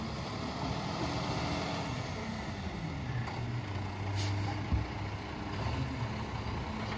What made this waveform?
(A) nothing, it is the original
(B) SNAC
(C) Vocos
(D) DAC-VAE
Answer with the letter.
A